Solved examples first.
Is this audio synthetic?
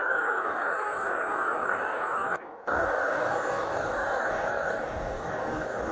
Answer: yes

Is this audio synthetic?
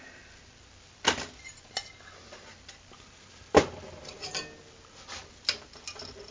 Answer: no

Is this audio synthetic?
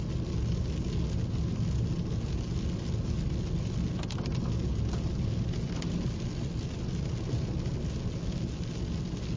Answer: no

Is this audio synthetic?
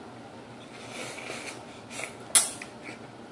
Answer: no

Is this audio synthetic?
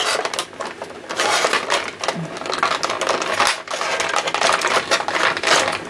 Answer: no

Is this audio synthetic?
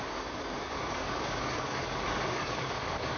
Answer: yes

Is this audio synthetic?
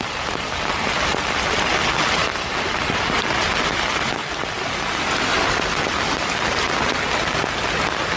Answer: no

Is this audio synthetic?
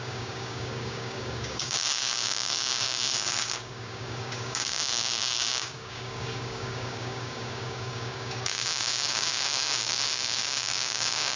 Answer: yes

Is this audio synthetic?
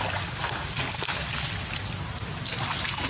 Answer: no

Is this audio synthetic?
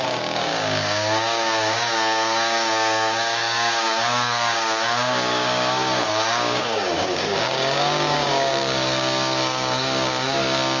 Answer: yes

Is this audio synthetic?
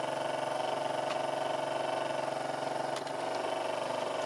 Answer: no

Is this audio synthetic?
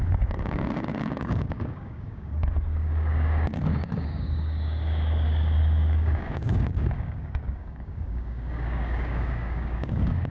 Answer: yes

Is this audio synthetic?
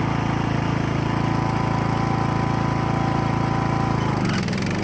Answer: no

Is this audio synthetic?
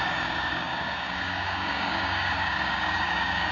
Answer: yes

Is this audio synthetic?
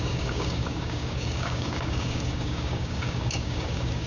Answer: yes